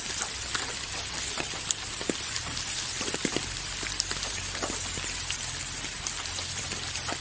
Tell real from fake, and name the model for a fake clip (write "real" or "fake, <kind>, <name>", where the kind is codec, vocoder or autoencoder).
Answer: fake, vocoder, BigVGAN v2